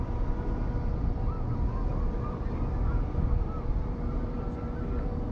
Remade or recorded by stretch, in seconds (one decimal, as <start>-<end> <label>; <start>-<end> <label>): 0.0-1.9 recorded; 1.9-4.4 remade; 4.4-5.3 recorded

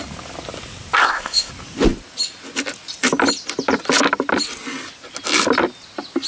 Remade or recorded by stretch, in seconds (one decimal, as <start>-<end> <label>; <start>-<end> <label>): 0.0-1.0 recorded; 1.0-1.5 remade; 1.5-6.3 recorded

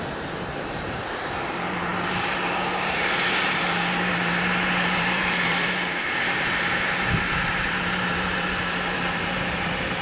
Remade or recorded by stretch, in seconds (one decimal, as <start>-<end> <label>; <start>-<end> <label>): 0.0-10.0 remade